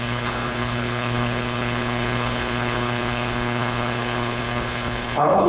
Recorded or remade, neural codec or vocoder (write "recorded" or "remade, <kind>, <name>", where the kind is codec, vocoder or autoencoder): remade, codec, HILCodec